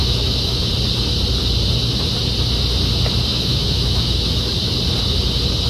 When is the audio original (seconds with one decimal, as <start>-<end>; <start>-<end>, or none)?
0.6-3.3; 4.5-5.7